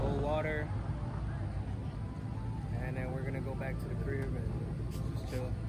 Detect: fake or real real